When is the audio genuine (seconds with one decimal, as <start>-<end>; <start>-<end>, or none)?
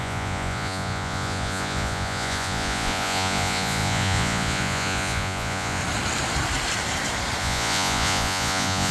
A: 5.8-7.4